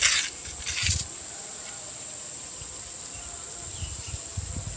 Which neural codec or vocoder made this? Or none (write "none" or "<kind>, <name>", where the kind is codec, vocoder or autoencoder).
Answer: none